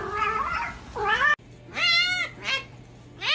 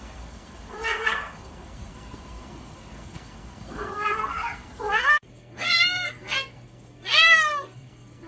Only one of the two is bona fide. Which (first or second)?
first